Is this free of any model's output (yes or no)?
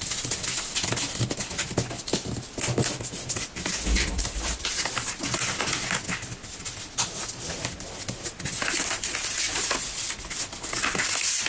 yes